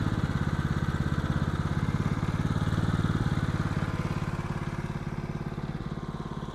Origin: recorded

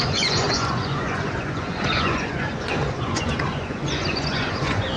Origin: remade